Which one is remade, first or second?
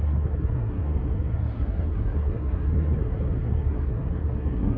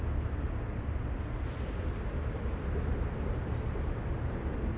first